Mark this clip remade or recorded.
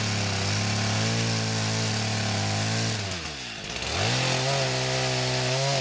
recorded